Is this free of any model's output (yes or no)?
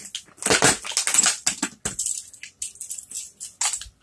yes